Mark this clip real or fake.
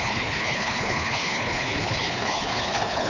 fake